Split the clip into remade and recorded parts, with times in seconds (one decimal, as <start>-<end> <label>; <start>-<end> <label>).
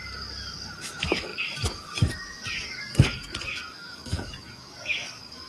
0.0-0.8 recorded; 0.8-5.5 remade